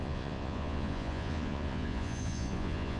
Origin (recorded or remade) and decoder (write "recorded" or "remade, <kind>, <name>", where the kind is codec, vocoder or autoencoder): remade, vocoder, Vocos